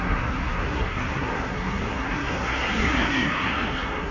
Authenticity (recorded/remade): remade